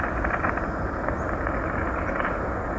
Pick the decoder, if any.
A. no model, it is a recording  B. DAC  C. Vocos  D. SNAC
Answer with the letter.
A